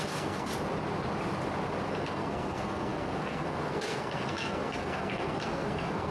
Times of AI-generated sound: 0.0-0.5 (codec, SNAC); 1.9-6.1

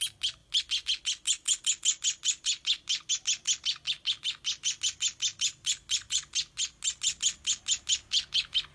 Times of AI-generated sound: none

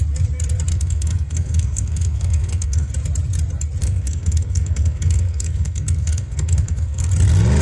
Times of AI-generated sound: 0.7-2.9 (codec, SNAC); 3.8-7.1

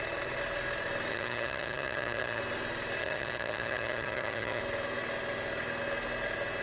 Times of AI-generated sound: 1.1-2.4 (vocoder, HiFi-GAN); 3.0-4.6